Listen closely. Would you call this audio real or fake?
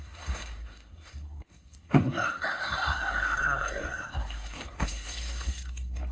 fake